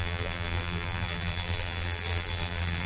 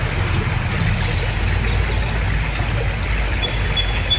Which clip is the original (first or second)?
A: second